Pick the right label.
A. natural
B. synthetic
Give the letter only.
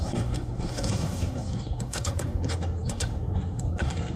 B